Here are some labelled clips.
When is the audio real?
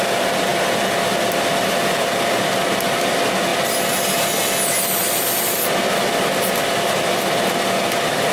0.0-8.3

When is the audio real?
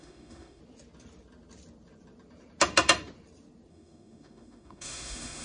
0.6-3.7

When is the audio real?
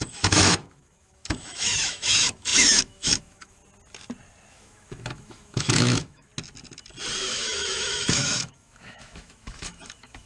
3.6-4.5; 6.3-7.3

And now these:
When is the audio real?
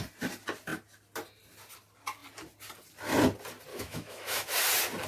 0.0-3.7; 4.5-5.1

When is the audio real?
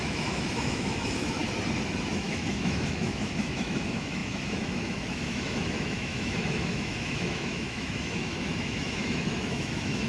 1.4-2.1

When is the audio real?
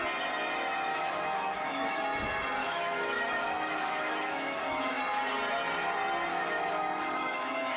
0.0-0.9; 2.0-2.6; 5.0-6.3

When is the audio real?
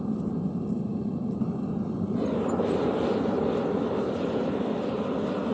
0.0-5.5